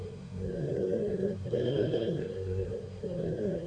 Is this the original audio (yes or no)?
no